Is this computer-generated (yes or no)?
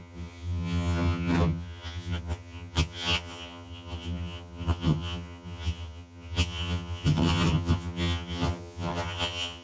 yes